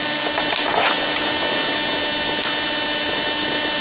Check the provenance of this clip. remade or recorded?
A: recorded